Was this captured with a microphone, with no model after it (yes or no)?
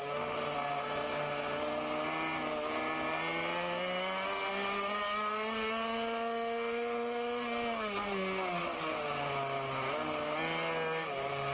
yes